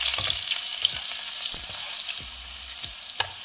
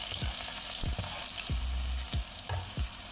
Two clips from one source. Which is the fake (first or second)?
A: first